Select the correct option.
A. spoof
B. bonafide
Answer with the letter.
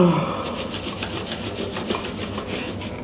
B